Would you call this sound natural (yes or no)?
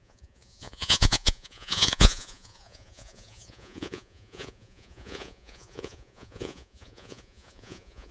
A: no